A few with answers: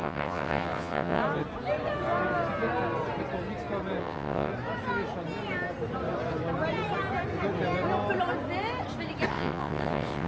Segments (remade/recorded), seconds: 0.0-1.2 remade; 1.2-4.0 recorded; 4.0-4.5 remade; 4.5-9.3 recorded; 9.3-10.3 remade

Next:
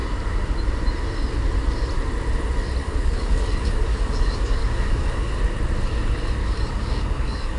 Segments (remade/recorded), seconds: 0.0-2.8 recorded; 2.8-5.3 remade; 5.3-6.4 recorded; 6.4-7.6 remade

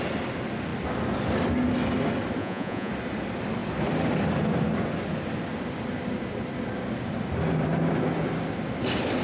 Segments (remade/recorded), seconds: 0.0-2.4 recorded; 2.4-2.9 remade; 2.9-9.2 recorded